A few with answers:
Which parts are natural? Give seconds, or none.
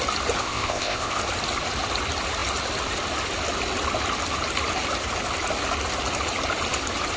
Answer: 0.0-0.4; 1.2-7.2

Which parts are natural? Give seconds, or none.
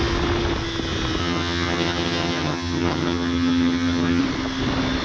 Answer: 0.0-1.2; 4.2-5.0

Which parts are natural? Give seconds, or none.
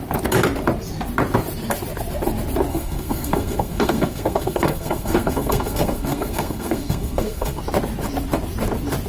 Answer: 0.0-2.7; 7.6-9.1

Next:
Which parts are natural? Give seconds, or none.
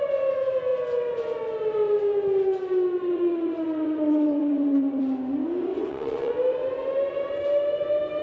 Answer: 0.0-3.0; 5.0-5.7; 6.3-8.2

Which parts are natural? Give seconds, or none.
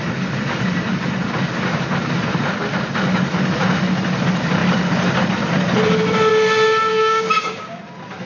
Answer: 0.0-6.9; 7.8-8.3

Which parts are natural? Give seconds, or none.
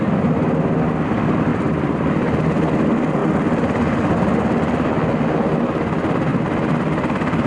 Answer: 0.0-1.5; 2.1-6.3